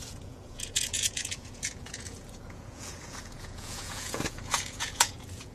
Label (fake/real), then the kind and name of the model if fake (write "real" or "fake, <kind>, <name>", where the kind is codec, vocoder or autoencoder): fake, vocoder, Vocos